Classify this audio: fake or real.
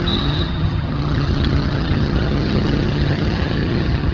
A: fake